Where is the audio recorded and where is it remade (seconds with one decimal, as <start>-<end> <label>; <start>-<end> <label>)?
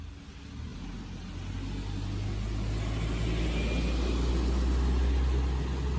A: 0.0-6.0 recorded